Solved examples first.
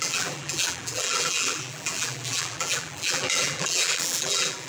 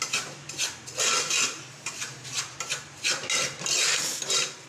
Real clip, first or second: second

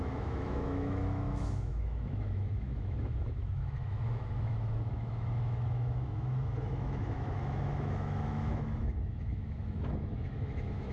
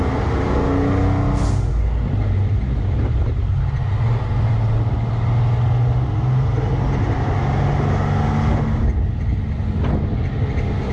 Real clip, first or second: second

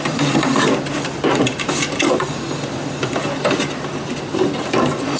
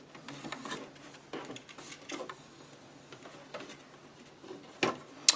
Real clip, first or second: second